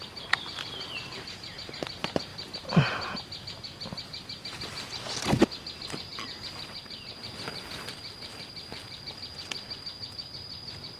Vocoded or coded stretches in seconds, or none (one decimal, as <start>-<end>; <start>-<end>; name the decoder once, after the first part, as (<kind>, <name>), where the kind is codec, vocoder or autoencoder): none